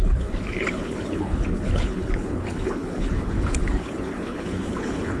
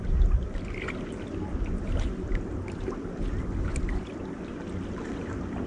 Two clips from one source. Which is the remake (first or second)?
first